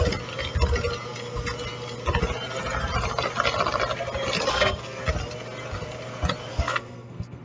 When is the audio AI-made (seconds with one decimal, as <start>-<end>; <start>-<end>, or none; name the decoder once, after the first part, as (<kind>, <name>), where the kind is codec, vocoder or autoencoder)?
4.5-5.0 (codec, SNAC); 6.5-7.4